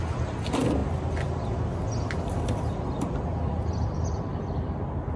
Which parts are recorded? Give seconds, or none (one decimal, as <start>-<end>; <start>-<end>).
0.0-5.2